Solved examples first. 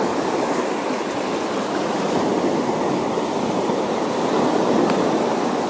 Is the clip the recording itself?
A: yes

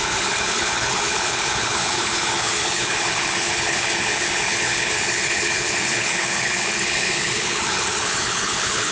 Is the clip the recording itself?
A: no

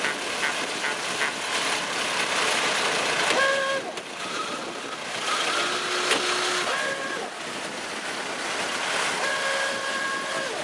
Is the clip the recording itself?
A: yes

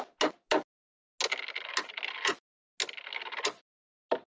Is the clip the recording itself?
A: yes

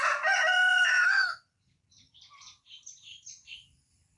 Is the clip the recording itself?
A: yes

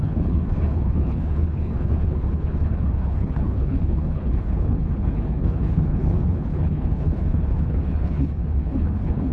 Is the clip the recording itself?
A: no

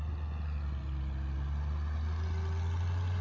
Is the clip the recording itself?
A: yes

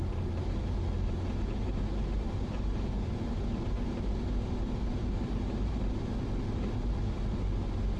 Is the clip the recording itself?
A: yes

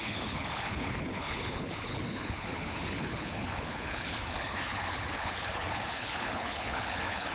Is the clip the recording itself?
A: no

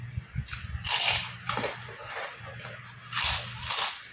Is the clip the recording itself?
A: yes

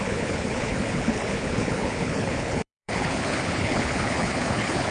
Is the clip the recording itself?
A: no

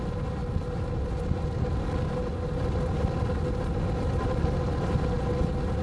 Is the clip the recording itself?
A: yes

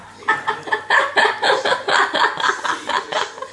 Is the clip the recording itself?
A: yes